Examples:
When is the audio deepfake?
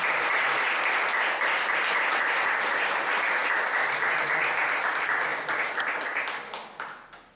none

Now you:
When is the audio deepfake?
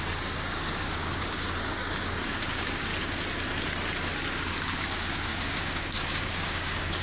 0.0-2.9 (codec, DAC); 4.3-7.0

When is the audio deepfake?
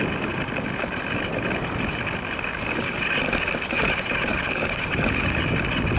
2.5-3.0 (codec, DAC); 4.3-4.9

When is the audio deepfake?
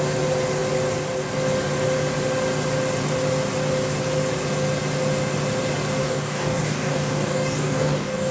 6.0-8.3 (codec, DAC)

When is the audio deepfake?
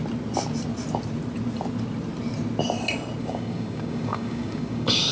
3.2-5.1 (codec, DAC)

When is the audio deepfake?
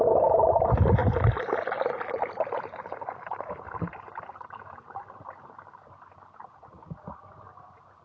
none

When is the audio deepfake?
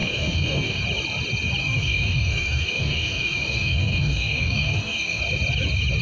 0.0-0.8 (codec, DAC); 1.6-5.2